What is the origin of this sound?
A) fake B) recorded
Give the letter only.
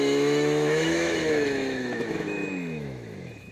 A